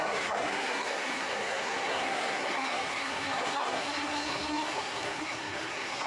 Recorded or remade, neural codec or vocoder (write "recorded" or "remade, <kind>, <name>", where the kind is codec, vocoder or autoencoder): remade, codec, SNAC